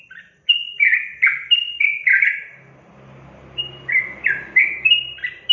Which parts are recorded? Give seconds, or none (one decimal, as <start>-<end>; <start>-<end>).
0.0-5.5